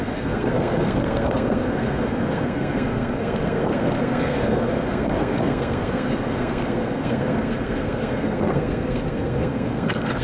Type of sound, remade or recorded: remade